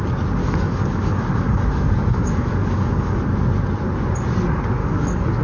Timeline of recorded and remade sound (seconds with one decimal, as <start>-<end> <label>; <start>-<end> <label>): 0.0-0.4 recorded; 0.4-3.2 remade; 3.2-4.8 recorded; 4.8-5.4 remade